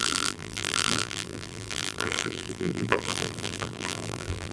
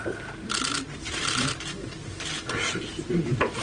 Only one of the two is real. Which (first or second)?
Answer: second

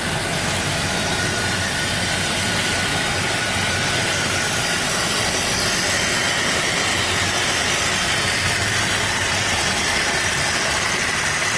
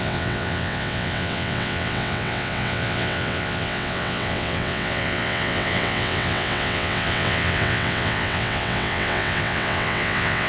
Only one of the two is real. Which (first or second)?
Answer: first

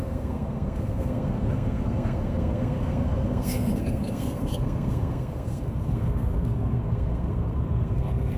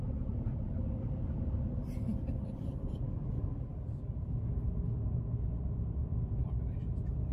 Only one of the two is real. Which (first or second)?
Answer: second